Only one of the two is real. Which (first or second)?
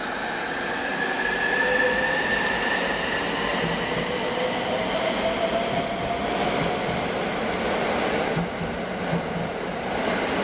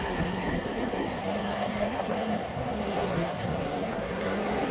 first